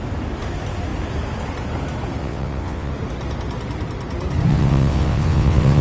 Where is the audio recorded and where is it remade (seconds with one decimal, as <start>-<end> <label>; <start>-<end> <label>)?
0.0-2.2 recorded; 2.2-2.9 remade; 2.9-4.5 recorded; 4.5-5.8 remade